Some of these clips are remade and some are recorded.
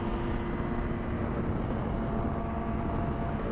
recorded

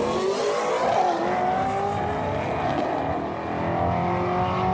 recorded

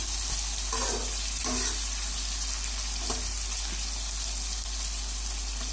recorded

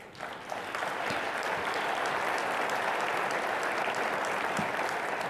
recorded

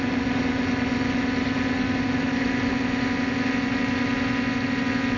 recorded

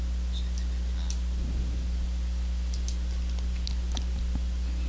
recorded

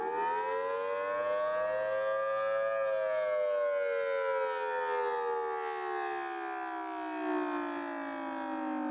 recorded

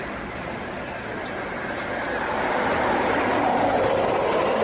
remade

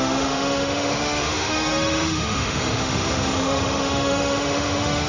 remade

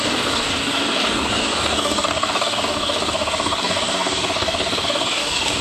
remade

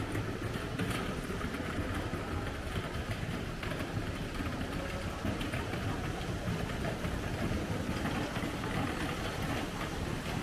remade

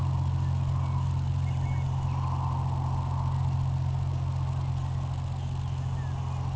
recorded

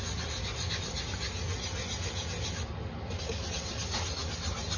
recorded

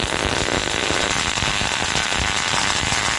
recorded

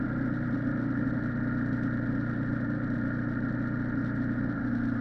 recorded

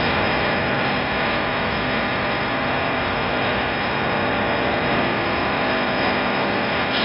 recorded